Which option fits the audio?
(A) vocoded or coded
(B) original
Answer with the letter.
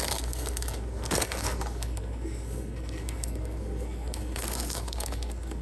A